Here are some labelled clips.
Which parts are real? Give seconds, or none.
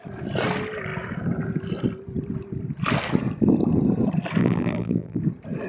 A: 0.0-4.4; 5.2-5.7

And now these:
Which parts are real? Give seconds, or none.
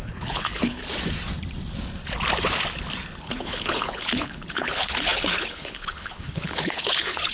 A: 0.8-3.2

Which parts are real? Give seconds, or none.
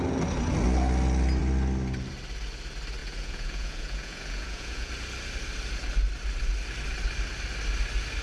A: 0.0-3.0; 4.9-8.2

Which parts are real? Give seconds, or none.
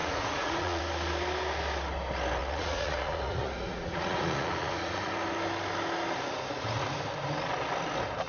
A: 0.8-2.4; 5.1-8.3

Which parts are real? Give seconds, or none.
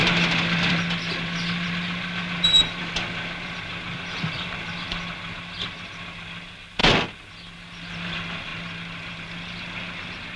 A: 0.0-10.4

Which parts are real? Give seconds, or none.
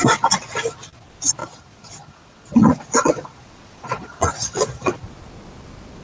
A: 0.0-1.4; 5.0-6.0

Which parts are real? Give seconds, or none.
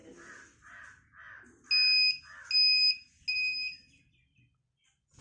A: 0.0-5.2